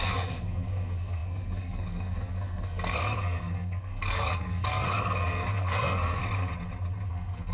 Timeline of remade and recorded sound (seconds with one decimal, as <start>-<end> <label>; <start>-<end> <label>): 0.0-6.2 remade; 6.2-7.1 recorded; 7.1-7.5 remade